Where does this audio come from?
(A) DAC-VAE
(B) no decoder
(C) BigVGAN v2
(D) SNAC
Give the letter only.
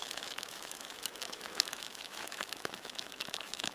A